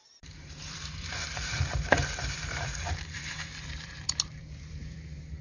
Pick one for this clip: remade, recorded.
remade